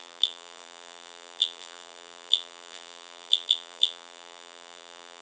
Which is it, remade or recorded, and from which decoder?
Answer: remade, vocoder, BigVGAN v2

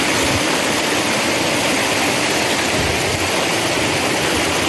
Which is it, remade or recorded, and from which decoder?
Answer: recorded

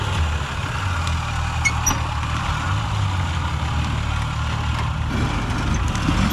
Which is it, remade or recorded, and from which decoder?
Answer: recorded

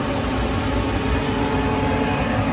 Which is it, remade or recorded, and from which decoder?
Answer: recorded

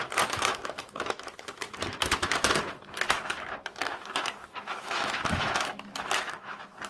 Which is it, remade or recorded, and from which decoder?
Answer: remade, autoencoder, DAC-VAE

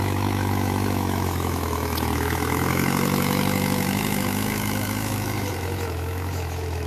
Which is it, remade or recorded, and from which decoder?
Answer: remade, autoencoder, DAC-VAE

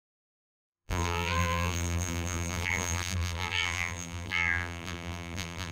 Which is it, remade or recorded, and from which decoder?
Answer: remade, vocoder, BigVGAN v2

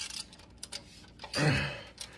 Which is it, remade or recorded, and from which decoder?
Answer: recorded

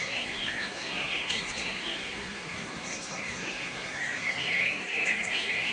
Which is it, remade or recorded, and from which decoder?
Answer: remade, codec, SNAC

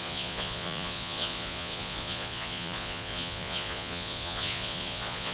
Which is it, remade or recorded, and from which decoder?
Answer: remade, vocoder, Vocos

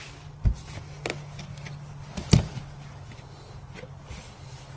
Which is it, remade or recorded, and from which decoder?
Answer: recorded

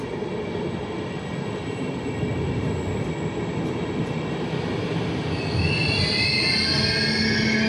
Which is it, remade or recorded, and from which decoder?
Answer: recorded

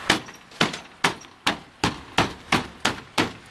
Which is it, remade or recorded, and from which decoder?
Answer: recorded